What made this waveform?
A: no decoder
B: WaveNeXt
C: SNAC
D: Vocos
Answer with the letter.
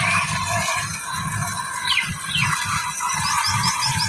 A